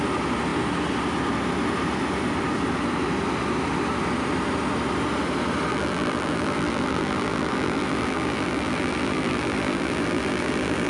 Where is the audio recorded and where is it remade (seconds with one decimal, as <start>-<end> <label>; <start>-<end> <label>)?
0.0-5.7 recorded; 5.7-10.9 remade